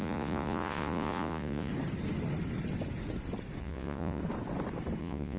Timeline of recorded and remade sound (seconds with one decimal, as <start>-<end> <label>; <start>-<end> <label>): 0.0-1.7 remade; 1.7-3.6 recorded; 3.6-4.2 remade; 4.2-5.0 recorded; 5.0-5.4 remade